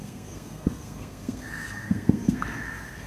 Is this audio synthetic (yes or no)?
yes